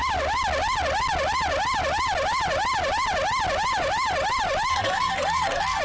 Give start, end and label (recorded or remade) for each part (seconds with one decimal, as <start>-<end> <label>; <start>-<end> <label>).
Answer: 0.0-4.7 recorded; 4.7-5.8 remade